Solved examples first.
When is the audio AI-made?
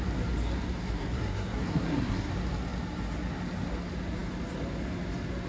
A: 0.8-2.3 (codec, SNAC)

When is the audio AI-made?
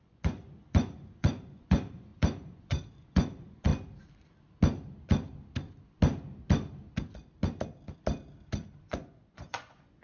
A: 0.0-3.7 (vocoder, Vocos); 8.8-10.0